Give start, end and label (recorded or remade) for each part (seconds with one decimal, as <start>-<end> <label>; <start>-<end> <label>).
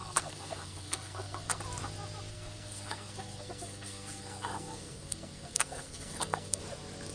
0.0-1.6 remade; 1.6-2.3 recorded; 2.3-6.6 remade; 6.6-7.1 recorded